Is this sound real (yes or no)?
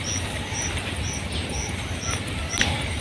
yes